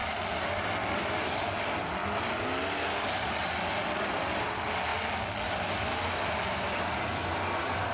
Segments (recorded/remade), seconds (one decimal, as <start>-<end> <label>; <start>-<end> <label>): 0.0-7.9 recorded